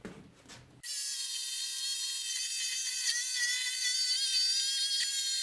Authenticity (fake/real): real